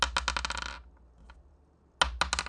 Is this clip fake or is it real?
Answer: real